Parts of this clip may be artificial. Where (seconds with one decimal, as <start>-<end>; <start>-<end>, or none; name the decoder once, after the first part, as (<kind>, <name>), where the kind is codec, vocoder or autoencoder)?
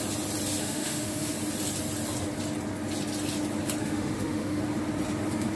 0.6-1.3 (autoencoder, DAC-VAE); 3.8-4.6